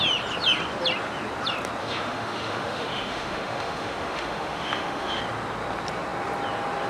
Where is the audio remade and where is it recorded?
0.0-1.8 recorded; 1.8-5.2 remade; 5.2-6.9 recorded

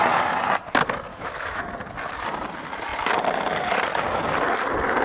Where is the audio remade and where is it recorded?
0.0-1.1 recorded; 1.1-1.6 remade; 1.6-5.0 recorded

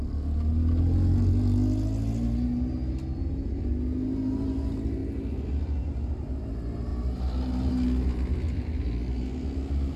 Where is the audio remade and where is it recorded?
0.0-10.0 recorded

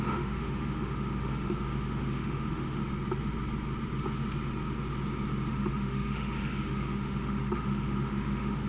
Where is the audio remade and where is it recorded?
0.0-2.8 remade; 2.8-5.5 recorded; 5.5-8.7 remade

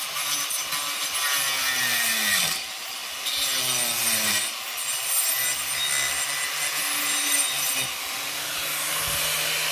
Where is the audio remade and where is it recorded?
0.0-9.7 recorded

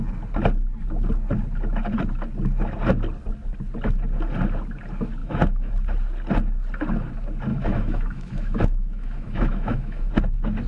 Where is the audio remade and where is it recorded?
0.0-5.2 recorded; 5.2-5.7 remade; 5.7-7.5 recorded; 7.5-10.1 remade; 10.1-10.7 recorded

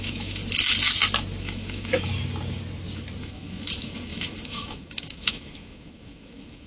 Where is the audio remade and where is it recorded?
0.0-0.4 remade; 0.4-1.4 recorded; 1.4-2.1 remade; 2.1-3.2 recorded; 3.2-6.7 remade